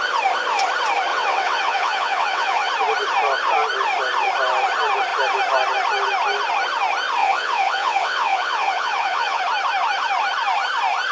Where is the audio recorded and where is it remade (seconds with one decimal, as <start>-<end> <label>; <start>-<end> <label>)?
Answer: 0.0-1.1 recorded; 1.1-2.7 remade; 2.7-7.2 recorded; 7.2-9.4 remade; 9.4-11.1 recorded